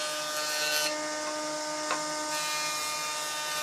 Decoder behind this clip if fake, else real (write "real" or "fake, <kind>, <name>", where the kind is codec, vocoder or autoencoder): real